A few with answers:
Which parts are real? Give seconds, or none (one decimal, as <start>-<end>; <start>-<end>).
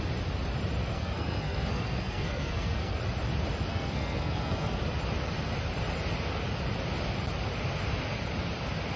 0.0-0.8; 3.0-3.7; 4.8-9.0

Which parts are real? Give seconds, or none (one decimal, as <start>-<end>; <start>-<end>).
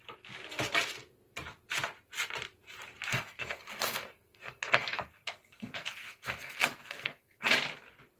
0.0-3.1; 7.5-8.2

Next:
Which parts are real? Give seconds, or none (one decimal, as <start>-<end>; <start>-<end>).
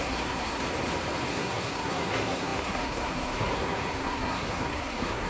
0.6-1.3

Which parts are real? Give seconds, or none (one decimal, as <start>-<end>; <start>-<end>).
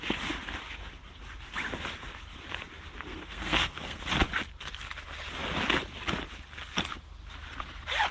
0.0-3.1; 4.0-8.1